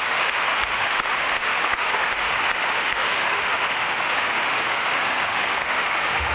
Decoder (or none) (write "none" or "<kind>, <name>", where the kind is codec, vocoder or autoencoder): autoencoder, DAC-VAE